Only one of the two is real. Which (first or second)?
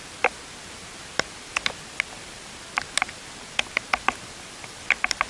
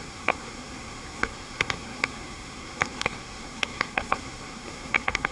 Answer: first